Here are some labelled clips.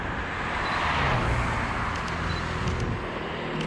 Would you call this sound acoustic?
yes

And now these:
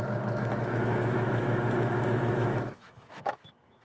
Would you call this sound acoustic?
no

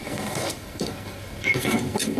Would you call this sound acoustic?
no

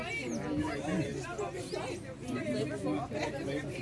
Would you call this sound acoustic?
yes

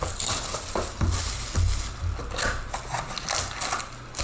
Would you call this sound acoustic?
yes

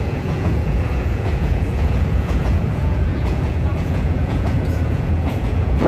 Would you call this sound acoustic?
no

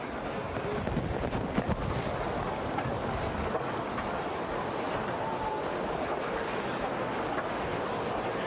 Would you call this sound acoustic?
yes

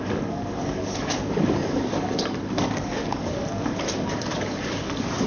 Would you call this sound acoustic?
no